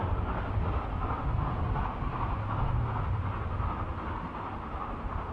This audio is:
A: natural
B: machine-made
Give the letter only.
A